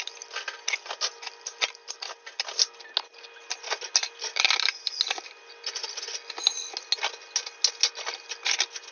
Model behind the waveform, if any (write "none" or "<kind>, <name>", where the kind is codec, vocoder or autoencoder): none